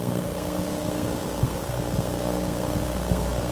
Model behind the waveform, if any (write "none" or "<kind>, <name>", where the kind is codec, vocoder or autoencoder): codec, SNAC